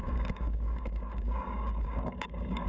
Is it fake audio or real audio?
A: fake